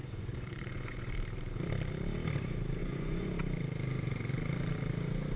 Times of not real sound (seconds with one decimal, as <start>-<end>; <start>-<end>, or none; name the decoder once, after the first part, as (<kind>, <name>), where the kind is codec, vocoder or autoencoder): 0.0-1.1 (vocoder, Vocos); 2.8-3.3

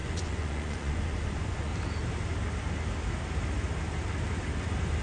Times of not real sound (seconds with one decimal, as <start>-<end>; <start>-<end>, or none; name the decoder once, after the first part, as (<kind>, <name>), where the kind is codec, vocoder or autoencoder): 0.0-1.7 (vocoder, Vocos)

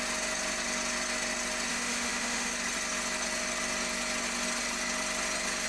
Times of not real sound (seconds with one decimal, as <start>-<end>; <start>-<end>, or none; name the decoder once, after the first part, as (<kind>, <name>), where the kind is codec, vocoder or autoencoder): 1.7-2.5 (autoencoder, DAC-VAE)